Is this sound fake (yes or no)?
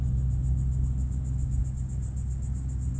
no